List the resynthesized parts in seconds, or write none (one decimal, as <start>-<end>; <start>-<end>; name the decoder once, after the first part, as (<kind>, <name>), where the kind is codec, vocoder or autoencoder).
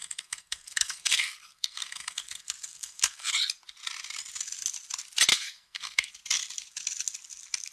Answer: 0.0-3.3 (codec, SNAC); 5.3-6.1